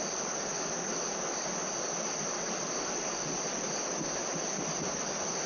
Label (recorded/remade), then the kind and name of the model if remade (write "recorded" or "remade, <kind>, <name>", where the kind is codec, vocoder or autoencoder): recorded